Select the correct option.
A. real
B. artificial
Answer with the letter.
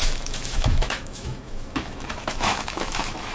B